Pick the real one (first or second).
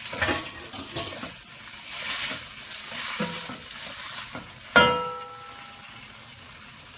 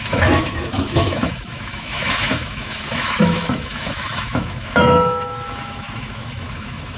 first